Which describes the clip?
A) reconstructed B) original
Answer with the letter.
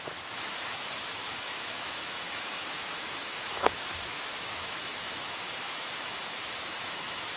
A